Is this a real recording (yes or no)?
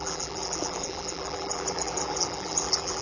no